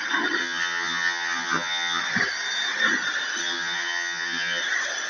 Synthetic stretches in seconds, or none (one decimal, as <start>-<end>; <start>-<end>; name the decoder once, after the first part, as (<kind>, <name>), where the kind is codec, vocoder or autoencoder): 0.4-2.0 (vocoder, HiFi-GAN); 3.4-4.6